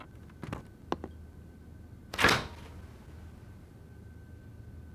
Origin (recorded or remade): recorded